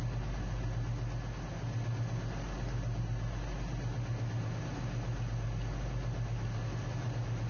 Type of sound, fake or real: real